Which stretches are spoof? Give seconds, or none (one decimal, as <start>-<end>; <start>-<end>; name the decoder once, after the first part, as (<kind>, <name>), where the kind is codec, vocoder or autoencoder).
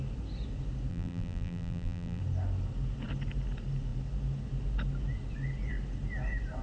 0.9-2.2 (vocoder, BigVGAN v2)